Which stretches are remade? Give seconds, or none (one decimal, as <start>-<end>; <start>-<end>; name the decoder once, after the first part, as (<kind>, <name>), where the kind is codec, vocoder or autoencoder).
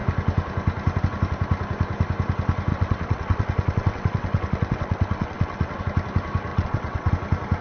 2.7-5.8 (vocoder, WaveNeXt); 6.5-7.1